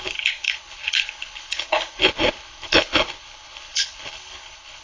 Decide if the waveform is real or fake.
fake